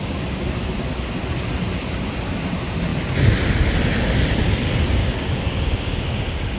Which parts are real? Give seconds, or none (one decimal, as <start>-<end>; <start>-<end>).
0.0-5.0